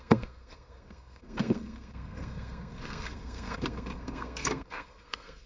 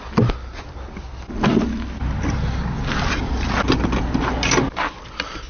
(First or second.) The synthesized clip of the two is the first